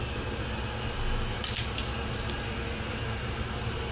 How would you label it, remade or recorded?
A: recorded